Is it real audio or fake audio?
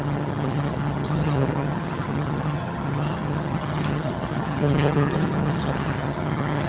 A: fake